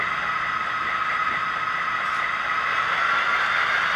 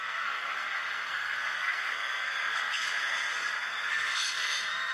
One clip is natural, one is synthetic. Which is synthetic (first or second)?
second